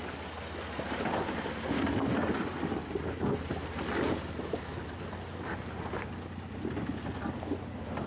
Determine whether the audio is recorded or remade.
recorded